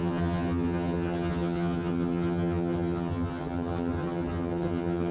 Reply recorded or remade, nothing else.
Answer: remade